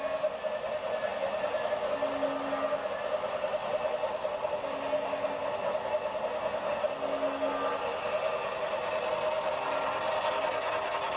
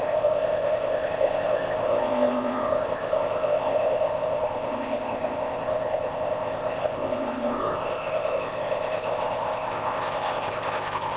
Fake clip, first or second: second